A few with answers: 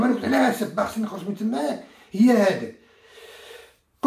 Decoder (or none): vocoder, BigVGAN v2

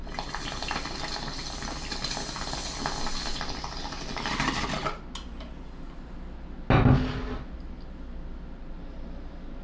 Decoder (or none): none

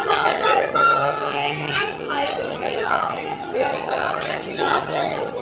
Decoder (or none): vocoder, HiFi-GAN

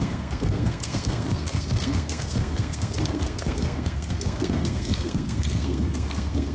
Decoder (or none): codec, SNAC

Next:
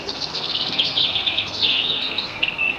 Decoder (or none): codec, SNAC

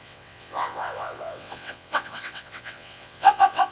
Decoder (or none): vocoder, WaveNeXt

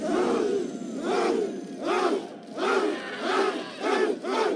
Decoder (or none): none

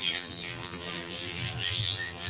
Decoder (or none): vocoder, BigVGAN v2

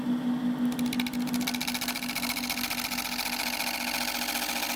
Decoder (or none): none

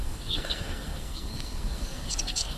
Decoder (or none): codec, SNAC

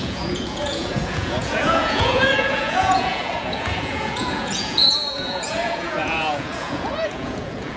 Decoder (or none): vocoder, Vocos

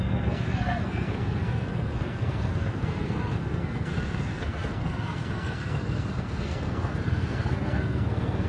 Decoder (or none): codec, SNAC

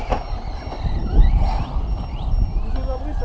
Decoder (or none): none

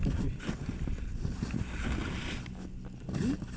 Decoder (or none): none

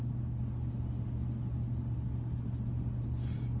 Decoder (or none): none